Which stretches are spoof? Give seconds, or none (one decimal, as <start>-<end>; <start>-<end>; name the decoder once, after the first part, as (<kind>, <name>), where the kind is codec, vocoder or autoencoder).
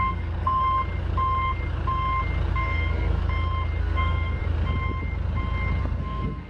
0.0-0.6 (codec, SNAC); 2.5-3.2; 3.8-4.4; 5.8-6.5